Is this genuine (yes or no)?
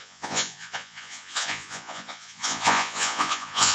no